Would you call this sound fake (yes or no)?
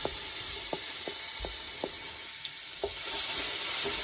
no